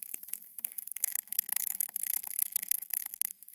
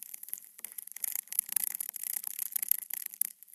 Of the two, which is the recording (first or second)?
second